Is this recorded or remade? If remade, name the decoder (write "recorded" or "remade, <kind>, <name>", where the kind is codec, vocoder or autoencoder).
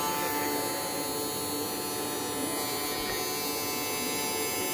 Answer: recorded